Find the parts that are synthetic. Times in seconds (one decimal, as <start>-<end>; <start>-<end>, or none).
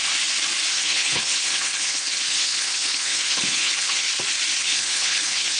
0.7-4.1; 4.6-5.6